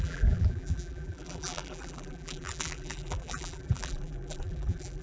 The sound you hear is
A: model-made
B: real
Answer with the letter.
A